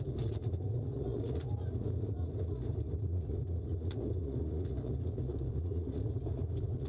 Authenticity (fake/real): fake